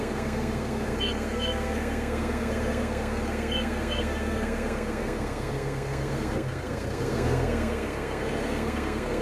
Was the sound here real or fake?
fake